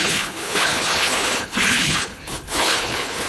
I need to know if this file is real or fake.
fake